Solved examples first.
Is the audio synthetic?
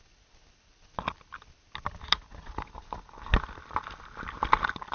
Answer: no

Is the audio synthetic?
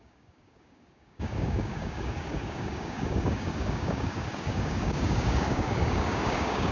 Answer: yes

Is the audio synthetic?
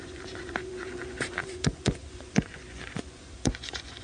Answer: yes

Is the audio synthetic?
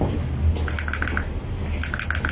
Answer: no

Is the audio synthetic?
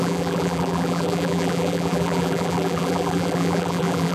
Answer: yes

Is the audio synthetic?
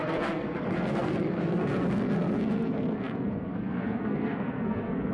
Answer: yes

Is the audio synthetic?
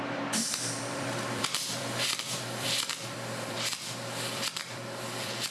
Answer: yes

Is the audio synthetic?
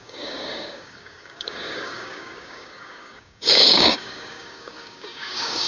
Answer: yes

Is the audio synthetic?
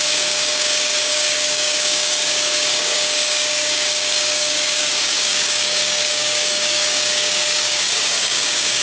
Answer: yes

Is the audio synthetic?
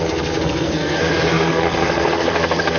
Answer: yes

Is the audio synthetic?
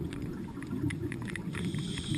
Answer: yes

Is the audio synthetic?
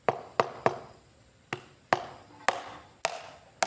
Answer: no